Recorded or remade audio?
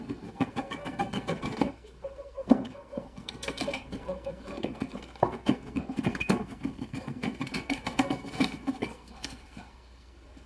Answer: remade